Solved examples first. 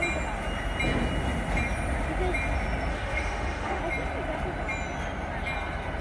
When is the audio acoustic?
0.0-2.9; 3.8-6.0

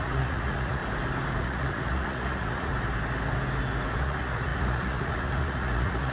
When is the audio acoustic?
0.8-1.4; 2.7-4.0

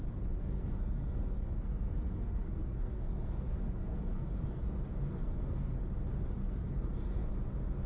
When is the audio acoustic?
0.0-0.4; 4.6-5.1; 5.8-6.4; 7.3-7.9